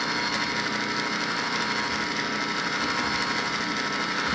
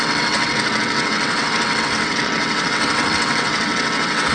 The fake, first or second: second